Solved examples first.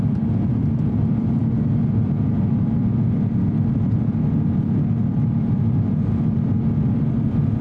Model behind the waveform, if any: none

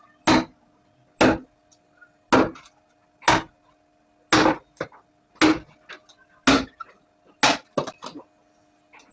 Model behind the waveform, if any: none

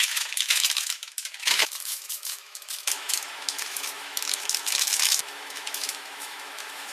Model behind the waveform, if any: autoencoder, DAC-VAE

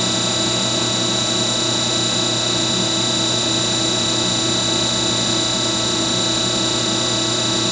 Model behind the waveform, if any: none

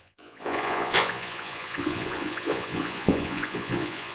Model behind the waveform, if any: vocoder, Vocos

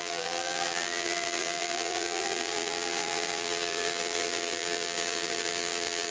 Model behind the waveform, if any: vocoder, BigVGAN v2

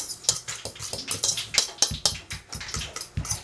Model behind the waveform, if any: none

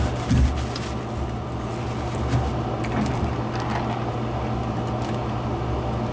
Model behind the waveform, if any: none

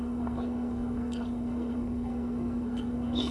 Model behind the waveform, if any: codec, SNAC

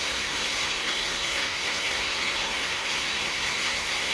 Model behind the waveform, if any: codec, SNAC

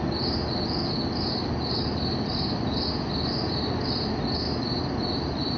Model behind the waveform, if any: none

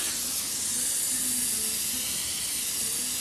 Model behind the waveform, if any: none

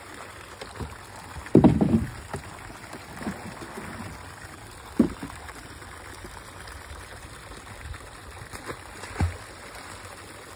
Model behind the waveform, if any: none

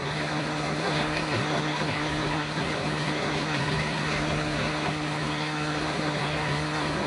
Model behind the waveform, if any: codec, SNAC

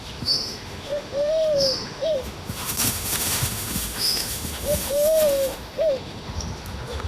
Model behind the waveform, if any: autoencoder, DAC-VAE